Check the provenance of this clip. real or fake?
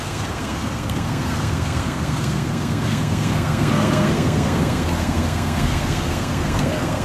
fake